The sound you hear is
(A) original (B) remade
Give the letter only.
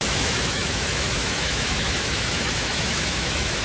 B